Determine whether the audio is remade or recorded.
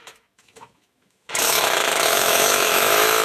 remade